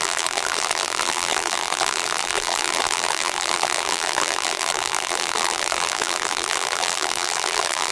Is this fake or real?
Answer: fake